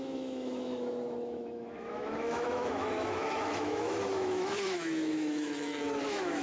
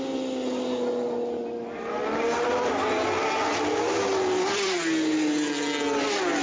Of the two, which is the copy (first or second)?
first